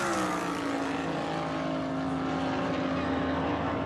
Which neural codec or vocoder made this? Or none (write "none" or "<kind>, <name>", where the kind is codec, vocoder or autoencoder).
none